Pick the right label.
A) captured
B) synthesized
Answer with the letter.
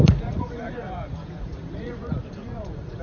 B